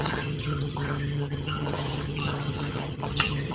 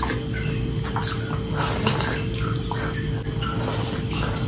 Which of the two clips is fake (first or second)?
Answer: first